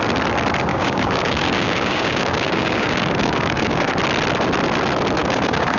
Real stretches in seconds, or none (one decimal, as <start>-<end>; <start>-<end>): 0.0-0.7; 3.9-5.2